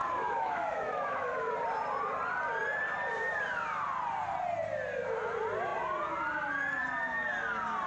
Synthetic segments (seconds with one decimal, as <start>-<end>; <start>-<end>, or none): 0.0-1.5